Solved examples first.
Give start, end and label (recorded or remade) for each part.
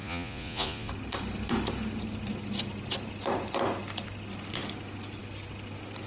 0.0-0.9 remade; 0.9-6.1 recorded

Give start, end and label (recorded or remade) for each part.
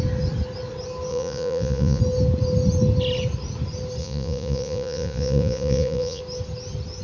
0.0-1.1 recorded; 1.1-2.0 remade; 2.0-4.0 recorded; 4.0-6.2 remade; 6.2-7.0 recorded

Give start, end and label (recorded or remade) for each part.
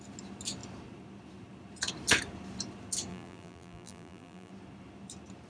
0.0-3.1 recorded; 3.1-4.5 remade; 4.5-5.5 recorded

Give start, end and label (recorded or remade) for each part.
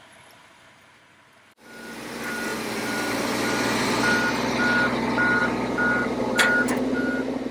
0.0-7.5 recorded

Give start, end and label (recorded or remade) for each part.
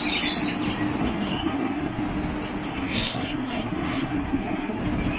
0.0-1.0 recorded; 1.0-2.0 remade; 2.0-2.7 recorded; 2.7-4.8 remade; 4.8-5.2 recorded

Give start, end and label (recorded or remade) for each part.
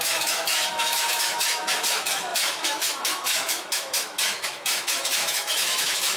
0.0-6.2 remade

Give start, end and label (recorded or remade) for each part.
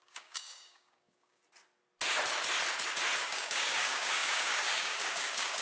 0.0-1.4 remade; 1.4-3.2 recorded; 3.2-5.6 remade